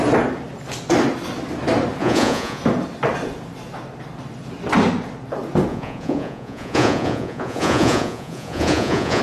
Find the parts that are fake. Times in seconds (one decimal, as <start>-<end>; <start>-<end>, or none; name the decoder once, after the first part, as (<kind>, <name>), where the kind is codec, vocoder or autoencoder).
2.0-2.6 (vocoder, Vocos); 5.7-9.2